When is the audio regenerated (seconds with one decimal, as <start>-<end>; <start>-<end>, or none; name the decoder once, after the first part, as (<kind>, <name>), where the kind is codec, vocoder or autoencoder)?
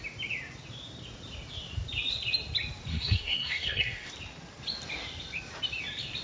2.9-4.1 (codec, SNAC)